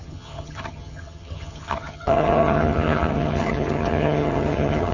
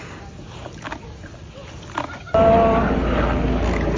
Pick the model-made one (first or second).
first